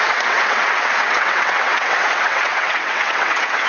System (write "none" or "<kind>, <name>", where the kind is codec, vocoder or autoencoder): vocoder, WaveNeXt